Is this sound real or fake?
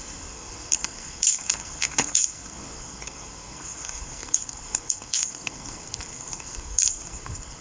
fake